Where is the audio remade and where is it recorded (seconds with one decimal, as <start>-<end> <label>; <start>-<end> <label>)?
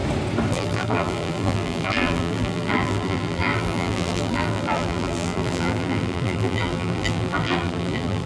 0.0-0.5 recorded; 0.5-8.3 remade